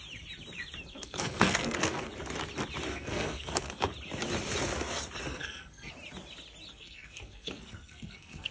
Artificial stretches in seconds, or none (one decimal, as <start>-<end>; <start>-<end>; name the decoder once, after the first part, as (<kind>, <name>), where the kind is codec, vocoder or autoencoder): 0.9-2.1 (codec, SNAC); 2.9-3.9; 5.3-5.9; 6.7-8.5